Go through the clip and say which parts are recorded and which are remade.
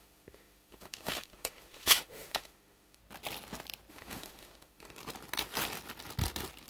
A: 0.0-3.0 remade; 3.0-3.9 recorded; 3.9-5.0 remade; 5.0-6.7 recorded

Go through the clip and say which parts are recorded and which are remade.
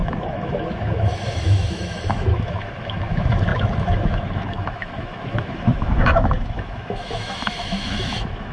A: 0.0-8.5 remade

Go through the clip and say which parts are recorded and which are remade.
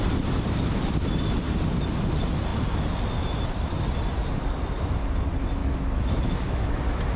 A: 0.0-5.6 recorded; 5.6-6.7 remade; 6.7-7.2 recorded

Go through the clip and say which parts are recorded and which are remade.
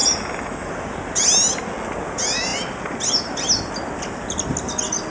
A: 0.0-0.7 remade; 0.7-5.1 recorded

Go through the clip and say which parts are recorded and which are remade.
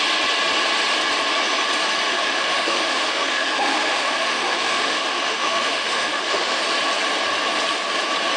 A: 0.0-2.1 recorded; 2.1-6.6 remade; 6.6-8.4 recorded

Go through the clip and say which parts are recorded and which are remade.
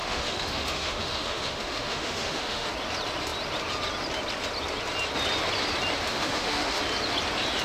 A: 0.0-2.7 remade; 2.7-6.1 recorded; 6.1-6.8 remade; 6.8-7.6 recorded